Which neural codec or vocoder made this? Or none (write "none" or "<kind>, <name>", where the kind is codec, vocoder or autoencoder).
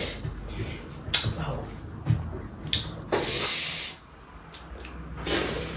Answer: none